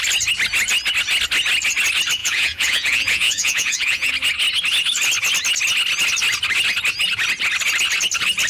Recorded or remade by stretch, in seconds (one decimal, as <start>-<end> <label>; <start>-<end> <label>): 0.0-2.2 recorded; 2.2-4.1 remade; 4.1-8.5 recorded